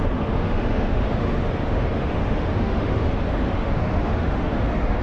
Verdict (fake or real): fake